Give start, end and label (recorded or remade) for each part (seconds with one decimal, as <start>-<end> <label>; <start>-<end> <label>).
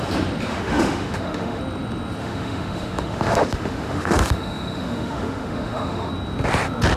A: 0.0-0.5 recorded; 0.5-1.6 remade; 1.6-2.2 recorded; 2.2-6.1 remade; 6.1-7.0 recorded